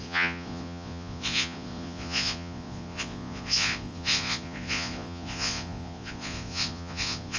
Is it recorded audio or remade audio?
remade